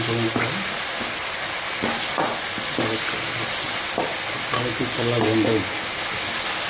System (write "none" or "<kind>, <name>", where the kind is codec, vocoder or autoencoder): none